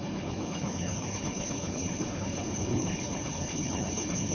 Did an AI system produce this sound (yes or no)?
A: yes